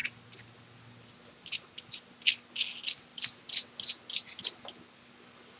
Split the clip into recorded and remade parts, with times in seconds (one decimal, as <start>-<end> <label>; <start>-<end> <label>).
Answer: 0.0-5.6 recorded